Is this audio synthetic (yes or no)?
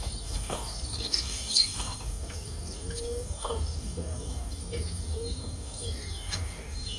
yes